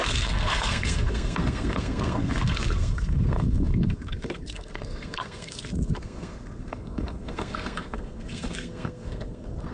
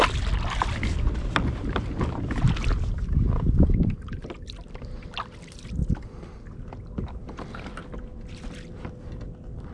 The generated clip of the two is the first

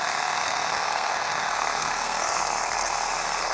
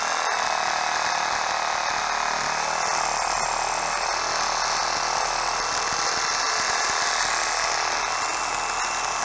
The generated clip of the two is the first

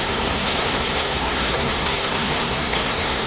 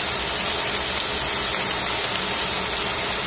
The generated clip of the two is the first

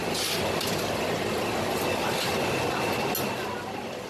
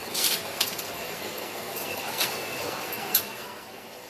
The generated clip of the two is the second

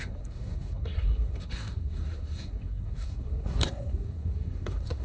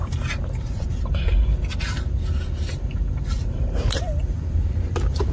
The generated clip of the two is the first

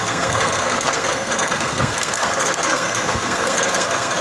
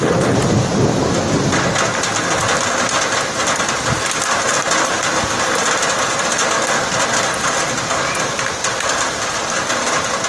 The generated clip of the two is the first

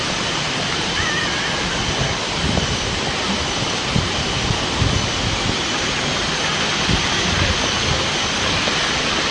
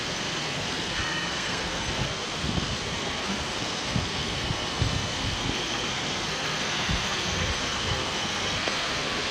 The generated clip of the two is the second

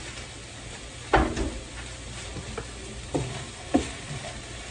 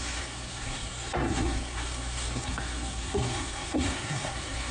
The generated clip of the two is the second